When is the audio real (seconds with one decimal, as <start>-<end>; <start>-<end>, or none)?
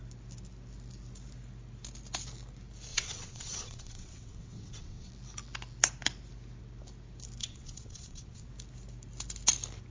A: 0.0-2.9; 5.1-7.4; 8.5-9.9